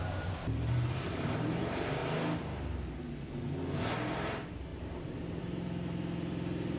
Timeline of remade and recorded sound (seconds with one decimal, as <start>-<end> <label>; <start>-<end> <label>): 0.0-2.0 remade; 2.0-3.8 recorded; 3.8-4.7 remade; 4.7-5.4 recorded; 5.4-6.8 remade